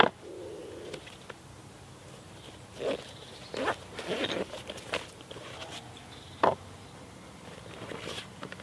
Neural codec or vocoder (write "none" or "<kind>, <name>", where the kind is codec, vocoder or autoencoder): none